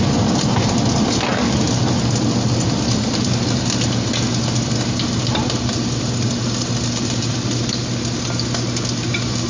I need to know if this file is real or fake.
real